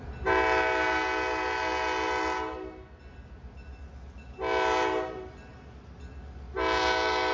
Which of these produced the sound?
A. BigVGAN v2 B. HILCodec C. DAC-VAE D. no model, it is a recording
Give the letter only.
D